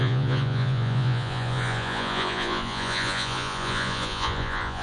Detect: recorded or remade remade